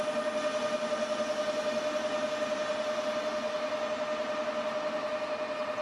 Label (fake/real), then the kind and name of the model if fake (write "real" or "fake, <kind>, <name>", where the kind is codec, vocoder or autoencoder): real